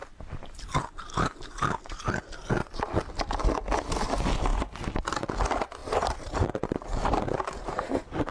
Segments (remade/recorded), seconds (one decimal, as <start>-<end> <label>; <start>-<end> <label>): 0.0-5.8 recorded; 5.8-7.2 remade; 7.2-8.3 recorded